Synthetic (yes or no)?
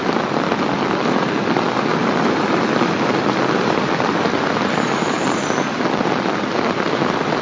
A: no